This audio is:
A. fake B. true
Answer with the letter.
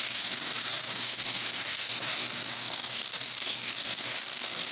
A